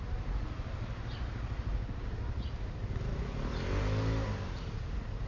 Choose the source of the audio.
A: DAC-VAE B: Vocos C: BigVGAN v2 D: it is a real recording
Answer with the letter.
D